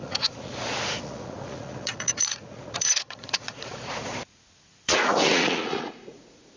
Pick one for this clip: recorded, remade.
remade